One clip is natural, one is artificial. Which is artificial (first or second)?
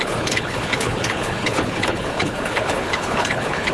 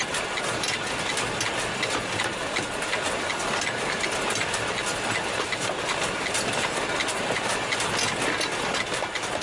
first